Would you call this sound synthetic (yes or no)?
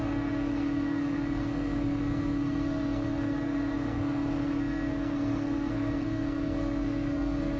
yes